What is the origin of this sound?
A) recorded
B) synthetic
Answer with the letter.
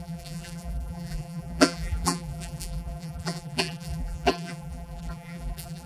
B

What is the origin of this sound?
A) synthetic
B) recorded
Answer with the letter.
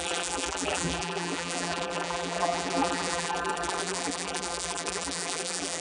A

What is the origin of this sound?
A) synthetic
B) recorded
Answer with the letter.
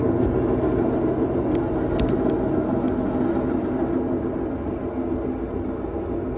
B